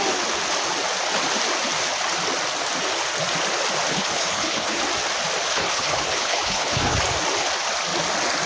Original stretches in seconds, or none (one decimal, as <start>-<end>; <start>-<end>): 0.0-3.9; 4.8-5.5; 7.0-8.5